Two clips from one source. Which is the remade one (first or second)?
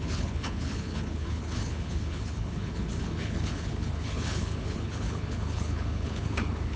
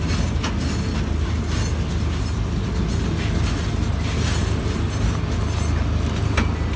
first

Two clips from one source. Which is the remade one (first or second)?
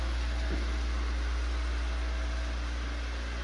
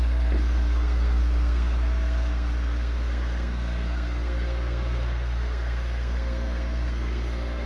second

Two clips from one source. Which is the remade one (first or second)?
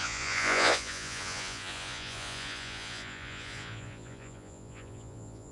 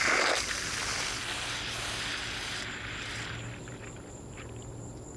first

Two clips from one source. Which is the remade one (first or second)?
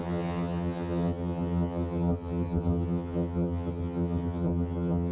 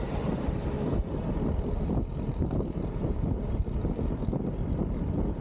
first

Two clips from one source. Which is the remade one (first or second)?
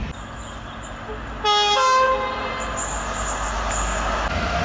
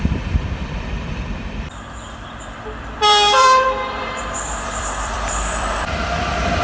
second